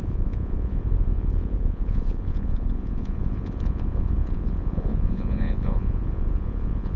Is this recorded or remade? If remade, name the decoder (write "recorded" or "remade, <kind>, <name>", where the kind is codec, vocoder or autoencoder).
remade, vocoder, Vocos